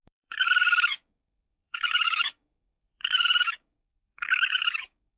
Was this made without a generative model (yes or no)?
no